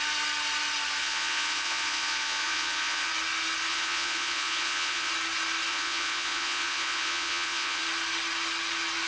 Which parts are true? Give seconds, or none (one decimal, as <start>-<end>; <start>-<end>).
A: 0.0-1.0; 3.1-3.7; 5.1-5.7; 7.8-9.1